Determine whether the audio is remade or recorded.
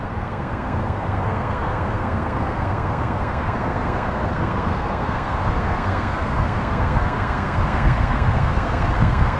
remade